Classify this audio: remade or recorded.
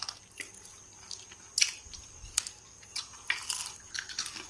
recorded